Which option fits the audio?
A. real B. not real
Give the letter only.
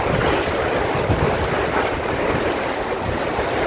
A